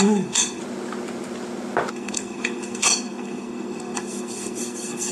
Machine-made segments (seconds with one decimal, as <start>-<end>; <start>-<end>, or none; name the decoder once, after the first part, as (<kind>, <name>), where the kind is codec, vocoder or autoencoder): 0.0-0.6 (codec, SNAC); 1.9-5.1